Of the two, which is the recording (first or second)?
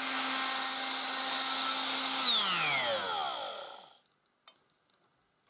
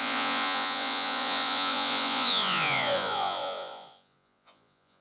first